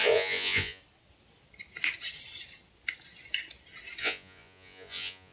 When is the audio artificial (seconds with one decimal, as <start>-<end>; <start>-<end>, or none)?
0.0-0.8; 4.0-5.3